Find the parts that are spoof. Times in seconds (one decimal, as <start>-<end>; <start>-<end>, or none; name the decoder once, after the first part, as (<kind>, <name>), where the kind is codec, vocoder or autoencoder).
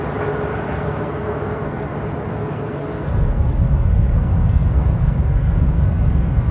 0.5-1.9 (codec, SNAC); 2.3-6.5